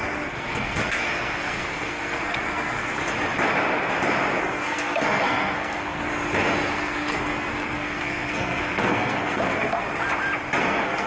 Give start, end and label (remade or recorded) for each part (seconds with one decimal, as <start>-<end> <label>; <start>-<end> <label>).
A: 0.0-3.0 remade; 3.0-4.4 recorded; 4.4-6.1 remade; 6.1-6.7 recorded; 6.7-9.8 remade; 9.8-10.6 recorded; 10.6-11.1 remade